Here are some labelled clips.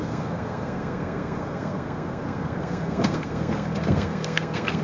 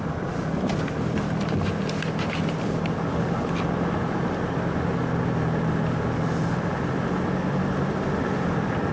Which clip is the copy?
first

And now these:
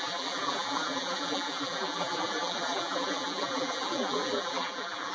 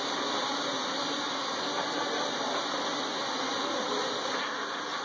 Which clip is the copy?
first